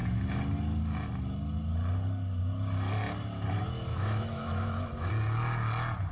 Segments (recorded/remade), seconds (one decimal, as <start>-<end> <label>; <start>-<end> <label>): 0.0-3.9 recorded; 3.9-5.1 remade; 5.1-6.1 recorded